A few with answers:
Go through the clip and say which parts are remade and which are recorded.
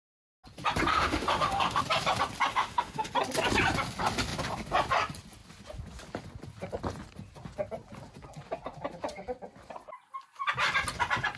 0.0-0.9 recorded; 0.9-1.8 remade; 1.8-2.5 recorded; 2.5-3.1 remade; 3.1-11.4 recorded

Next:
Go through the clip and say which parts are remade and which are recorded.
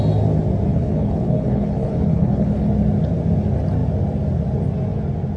0.0-0.7 recorded; 0.7-2.7 remade; 2.7-5.4 recorded